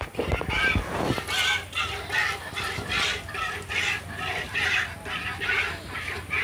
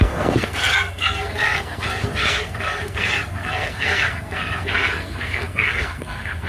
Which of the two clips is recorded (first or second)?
first